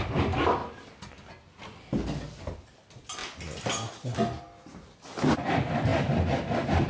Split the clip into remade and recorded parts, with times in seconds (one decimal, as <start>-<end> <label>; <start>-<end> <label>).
0.0-6.9 recorded

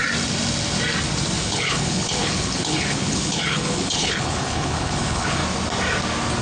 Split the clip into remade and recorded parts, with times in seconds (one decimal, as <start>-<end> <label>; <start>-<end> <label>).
0.0-1.4 recorded; 1.4-5.4 remade; 5.4-6.4 recorded

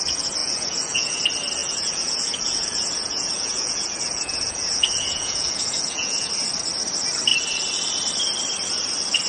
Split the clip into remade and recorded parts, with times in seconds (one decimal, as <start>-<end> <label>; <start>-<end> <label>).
0.0-0.4 recorded; 0.4-1.2 remade; 1.2-1.6 recorded; 1.6-6.3 remade; 6.3-9.3 recorded

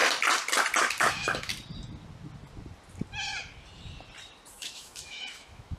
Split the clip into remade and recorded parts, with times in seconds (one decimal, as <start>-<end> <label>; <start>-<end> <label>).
0.0-1.1 recorded; 1.1-1.5 remade; 1.5-4.5 recorded; 4.5-5.8 remade